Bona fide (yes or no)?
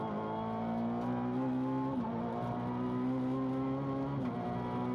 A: yes